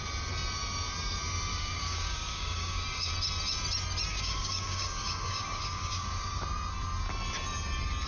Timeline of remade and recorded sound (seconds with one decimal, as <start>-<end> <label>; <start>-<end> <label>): 0.0-1.5 recorded; 1.5-3.1 remade; 3.1-4.1 recorded; 4.1-6.4 remade; 6.4-8.1 recorded